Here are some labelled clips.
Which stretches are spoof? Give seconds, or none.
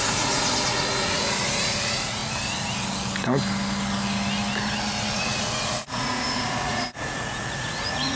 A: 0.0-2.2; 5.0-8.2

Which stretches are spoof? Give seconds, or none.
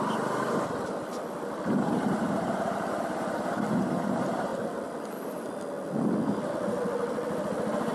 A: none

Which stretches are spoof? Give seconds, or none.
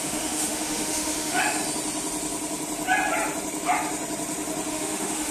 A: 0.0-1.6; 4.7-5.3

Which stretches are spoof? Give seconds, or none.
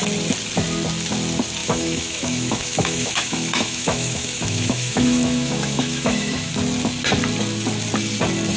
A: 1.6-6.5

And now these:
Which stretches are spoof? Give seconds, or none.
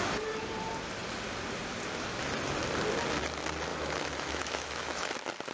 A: 3.7-5.1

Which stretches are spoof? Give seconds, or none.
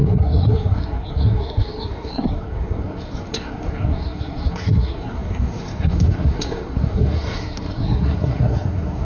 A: 0.0-9.0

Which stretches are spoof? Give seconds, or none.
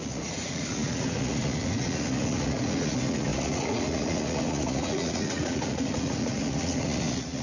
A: 0.0-7.4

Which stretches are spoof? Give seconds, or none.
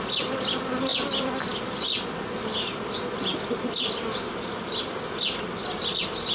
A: none